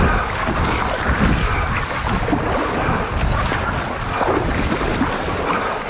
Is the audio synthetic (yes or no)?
no